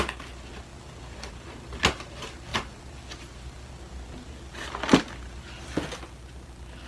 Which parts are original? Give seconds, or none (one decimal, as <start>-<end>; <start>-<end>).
0.0-6.9